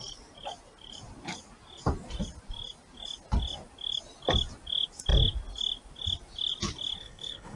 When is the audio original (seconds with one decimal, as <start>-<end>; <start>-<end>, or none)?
0.0-7.0